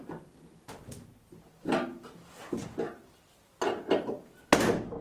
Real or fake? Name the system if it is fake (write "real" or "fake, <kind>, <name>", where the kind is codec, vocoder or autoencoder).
real